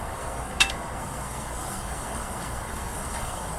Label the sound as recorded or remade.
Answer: remade